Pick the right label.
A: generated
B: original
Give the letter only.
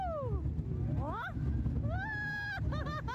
B